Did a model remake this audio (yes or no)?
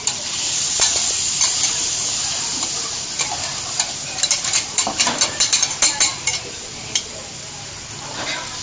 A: no